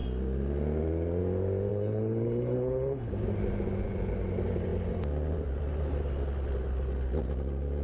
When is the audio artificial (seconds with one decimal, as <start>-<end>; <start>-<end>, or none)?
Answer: 1.7-3.1